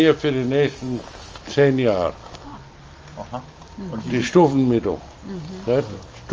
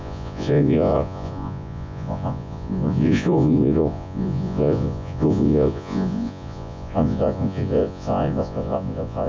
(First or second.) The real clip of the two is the first